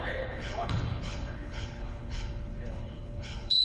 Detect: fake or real fake